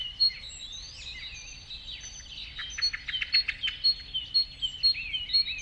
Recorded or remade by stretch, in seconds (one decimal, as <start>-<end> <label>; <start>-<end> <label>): 0.0-0.8 remade; 0.8-5.6 recorded